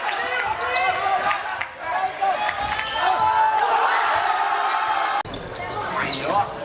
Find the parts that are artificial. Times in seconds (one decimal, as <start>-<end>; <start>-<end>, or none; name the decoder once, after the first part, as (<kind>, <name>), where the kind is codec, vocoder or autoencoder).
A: none